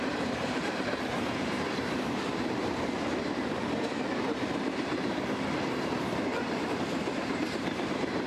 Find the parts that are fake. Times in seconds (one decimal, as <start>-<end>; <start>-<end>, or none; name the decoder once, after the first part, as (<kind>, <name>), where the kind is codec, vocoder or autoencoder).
0.0-2.6 (vocoder, BigVGAN v2); 4.1-8.3